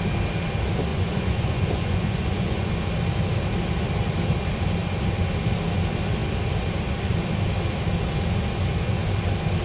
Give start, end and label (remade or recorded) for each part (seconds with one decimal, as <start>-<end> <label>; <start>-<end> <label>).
0.0-0.9 recorded; 0.9-2.7 remade; 2.7-9.6 recorded